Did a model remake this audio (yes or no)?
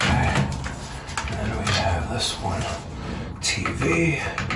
no